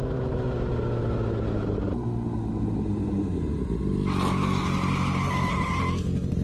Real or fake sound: real